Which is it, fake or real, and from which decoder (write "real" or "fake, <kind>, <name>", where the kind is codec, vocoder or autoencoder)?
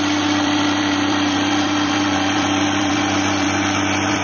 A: fake, vocoder, BigVGAN v2